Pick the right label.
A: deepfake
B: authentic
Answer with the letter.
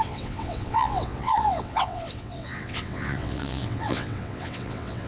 A